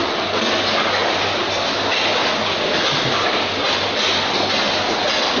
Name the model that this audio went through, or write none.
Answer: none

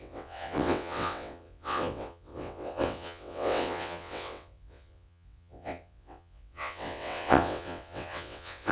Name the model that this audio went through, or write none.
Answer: vocoder, WaveNeXt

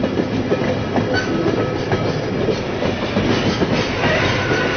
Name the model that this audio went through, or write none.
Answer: none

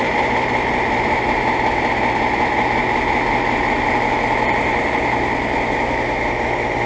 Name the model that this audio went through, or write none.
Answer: none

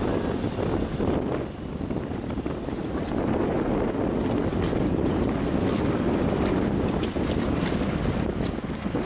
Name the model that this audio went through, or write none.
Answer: none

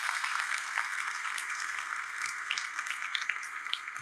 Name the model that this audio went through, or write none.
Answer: codec, SNAC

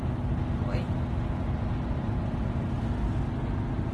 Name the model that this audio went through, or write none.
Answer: none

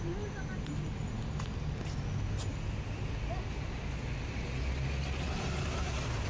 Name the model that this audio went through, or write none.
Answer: none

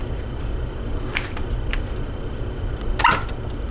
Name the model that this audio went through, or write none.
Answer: none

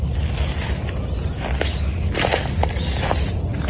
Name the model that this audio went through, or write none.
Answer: none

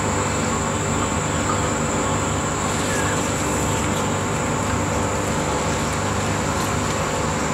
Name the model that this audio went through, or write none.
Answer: none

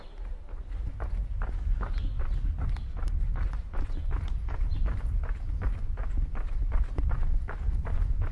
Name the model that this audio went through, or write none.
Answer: none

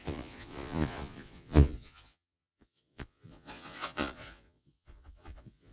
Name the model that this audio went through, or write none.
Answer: vocoder, Vocos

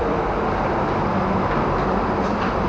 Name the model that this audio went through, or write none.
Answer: vocoder, BigVGAN v2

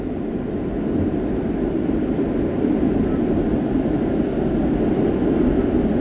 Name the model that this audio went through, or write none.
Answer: none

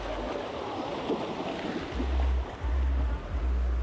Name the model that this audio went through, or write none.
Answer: none